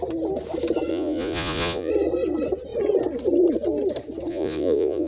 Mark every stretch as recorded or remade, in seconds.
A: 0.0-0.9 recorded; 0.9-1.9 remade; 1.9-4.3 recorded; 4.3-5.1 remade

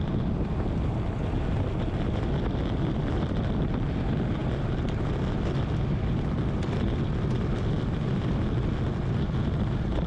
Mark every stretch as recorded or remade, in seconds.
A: 0.0-10.1 recorded

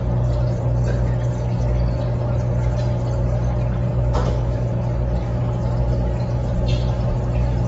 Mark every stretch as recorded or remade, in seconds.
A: 0.0-3.9 recorded; 3.9-4.7 remade; 4.7-7.7 recorded

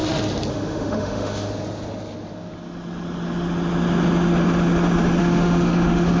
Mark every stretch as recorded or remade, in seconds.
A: 0.0-0.5 recorded; 0.5-1.5 remade; 1.5-5.2 recorded; 5.2-6.2 remade